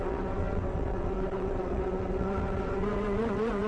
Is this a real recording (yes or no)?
no